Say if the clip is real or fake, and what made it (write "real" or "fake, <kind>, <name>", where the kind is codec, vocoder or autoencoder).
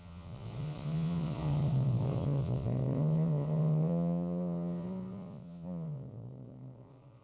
fake, vocoder, Vocos